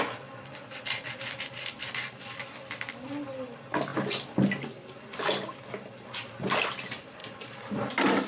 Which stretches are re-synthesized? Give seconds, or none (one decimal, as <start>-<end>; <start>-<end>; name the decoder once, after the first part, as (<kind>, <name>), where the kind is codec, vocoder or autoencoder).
none